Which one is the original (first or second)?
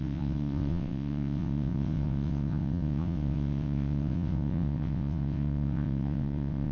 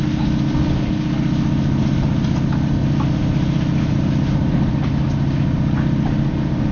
second